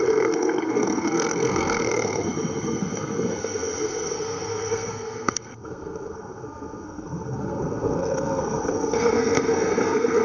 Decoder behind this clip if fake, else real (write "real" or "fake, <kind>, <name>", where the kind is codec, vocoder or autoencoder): fake, codec, SNAC